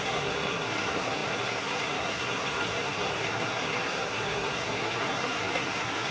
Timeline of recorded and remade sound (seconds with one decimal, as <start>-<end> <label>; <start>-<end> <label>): 0.0-6.1 remade